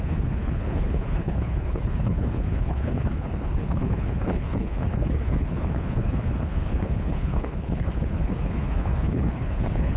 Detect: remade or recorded remade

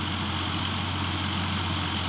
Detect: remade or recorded recorded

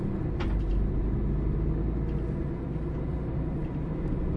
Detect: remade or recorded recorded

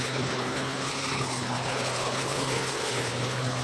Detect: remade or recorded remade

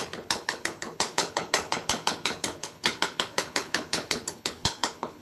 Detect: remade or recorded remade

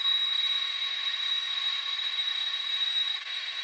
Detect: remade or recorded remade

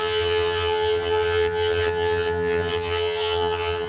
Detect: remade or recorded remade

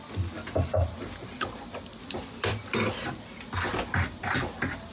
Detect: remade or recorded recorded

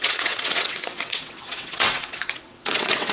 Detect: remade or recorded remade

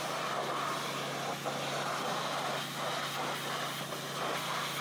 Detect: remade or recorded recorded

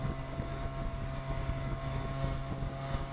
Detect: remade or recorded remade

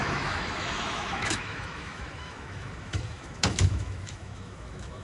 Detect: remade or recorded remade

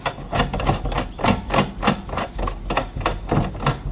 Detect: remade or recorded recorded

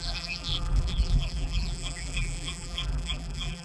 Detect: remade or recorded remade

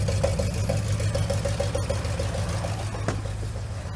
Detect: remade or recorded recorded